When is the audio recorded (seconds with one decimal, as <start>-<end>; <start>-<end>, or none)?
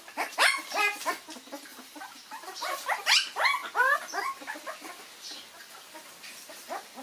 0.0-1.7; 3.0-7.0